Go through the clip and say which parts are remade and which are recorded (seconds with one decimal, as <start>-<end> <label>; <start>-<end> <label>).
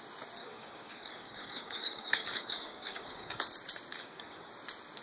0.0-0.4 recorded; 0.4-3.4 remade; 3.4-3.9 recorded; 3.9-4.5 remade; 4.5-5.0 recorded